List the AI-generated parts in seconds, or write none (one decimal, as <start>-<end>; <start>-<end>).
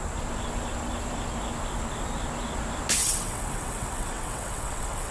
3.0-5.1